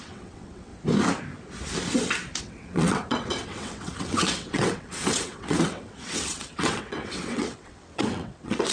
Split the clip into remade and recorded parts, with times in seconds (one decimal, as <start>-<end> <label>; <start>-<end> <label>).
0.0-0.7 remade; 0.7-2.4 recorded; 2.4-8.7 remade